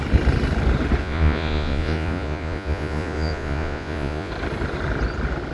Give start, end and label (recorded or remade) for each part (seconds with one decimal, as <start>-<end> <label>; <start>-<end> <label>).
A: 0.0-1.0 recorded; 1.0-4.3 remade; 4.3-5.5 recorded